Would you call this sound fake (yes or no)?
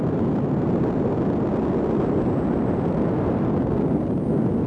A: no